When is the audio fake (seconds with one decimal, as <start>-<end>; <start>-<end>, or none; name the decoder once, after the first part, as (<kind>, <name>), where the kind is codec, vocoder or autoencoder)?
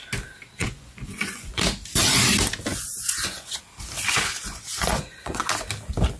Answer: 0.6-1.6 (vocoder, Vocos); 2.7-3.6; 4.4-5.4